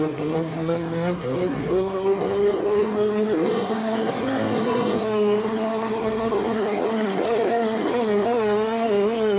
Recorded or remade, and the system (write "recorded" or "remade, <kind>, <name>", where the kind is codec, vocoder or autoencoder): remade, codec, SNAC